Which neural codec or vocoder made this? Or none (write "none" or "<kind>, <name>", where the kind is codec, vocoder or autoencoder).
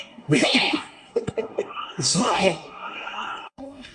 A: codec, SNAC